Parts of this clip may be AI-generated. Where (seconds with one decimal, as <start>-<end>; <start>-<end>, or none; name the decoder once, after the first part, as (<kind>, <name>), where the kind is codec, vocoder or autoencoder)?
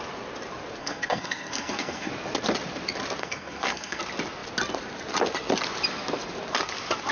0.8-2.1 (codec, SNAC); 3.2-4.0